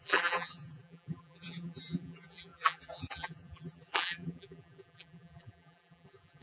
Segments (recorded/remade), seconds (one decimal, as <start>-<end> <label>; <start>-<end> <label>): 0.0-6.4 remade